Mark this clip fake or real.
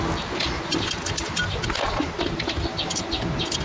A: real